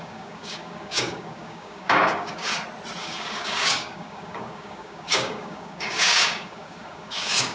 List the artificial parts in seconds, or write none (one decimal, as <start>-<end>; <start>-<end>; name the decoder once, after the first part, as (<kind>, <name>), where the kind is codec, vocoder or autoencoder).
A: 0.0-2.5 (codec, DAC); 3.0-7.5